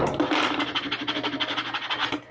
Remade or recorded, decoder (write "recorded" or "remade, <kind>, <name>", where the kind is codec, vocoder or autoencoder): recorded